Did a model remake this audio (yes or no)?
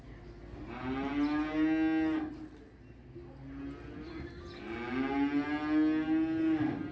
no